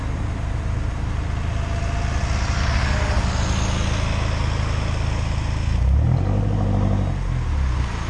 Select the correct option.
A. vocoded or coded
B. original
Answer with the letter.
B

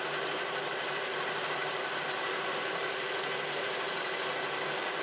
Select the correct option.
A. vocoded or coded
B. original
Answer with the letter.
B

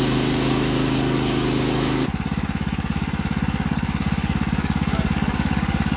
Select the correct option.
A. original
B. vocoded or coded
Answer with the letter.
B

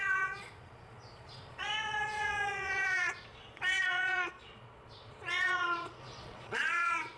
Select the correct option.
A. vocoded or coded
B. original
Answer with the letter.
A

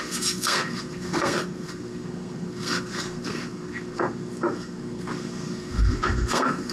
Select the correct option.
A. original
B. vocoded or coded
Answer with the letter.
B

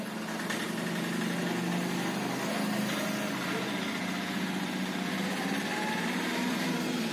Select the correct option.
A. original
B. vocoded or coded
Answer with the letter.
A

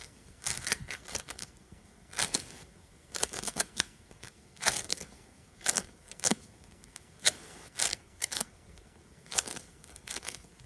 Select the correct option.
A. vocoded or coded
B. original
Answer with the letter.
A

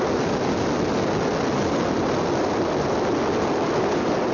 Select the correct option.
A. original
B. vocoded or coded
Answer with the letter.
A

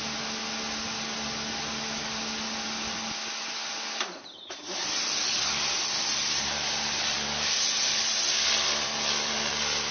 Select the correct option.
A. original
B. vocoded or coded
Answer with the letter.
A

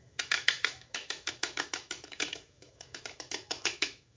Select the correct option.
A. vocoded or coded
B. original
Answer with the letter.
A